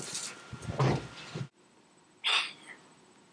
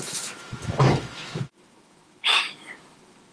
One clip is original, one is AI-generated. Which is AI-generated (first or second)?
second